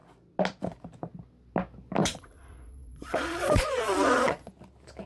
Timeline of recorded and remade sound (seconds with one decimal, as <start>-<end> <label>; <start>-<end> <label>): 0.0-2.0 recorded; 2.0-4.5 remade; 4.5-5.1 recorded